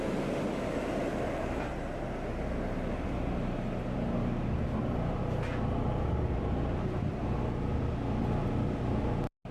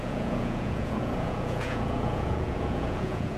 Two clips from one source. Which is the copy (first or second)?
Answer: second